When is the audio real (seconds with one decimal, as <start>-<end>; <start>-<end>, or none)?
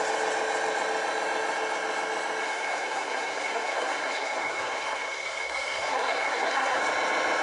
0.0-2.4; 6.8-7.4